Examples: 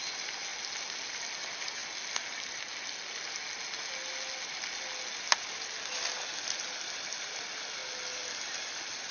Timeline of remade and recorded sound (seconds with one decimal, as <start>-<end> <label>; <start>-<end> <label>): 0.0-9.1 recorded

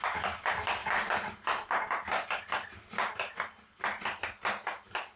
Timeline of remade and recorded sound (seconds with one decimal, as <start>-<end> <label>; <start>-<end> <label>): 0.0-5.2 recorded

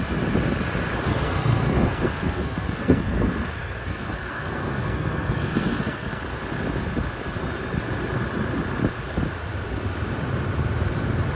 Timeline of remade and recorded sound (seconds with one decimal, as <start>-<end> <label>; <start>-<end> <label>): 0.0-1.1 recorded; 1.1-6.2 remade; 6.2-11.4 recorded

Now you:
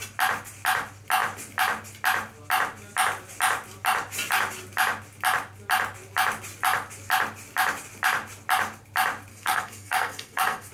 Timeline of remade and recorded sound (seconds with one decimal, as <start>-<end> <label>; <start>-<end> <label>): 0.0-9.3 recorded; 9.3-10.7 remade

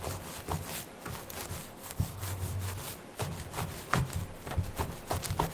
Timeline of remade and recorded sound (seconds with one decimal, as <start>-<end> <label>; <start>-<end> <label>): 0.0-1.7 recorded; 1.7-2.5 remade; 2.5-5.5 recorded

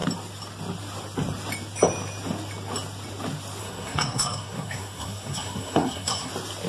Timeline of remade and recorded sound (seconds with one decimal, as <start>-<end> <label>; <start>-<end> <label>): 0.0-3.6 recorded; 3.6-6.3 remade; 6.3-6.7 recorded

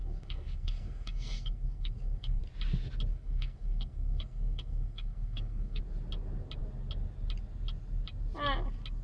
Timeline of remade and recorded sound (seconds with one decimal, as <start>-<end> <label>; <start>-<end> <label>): 0.0-2.4 remade; 2.4-3.1 recorded; 3.1-5.8 remade; 5.8-9.0 recorded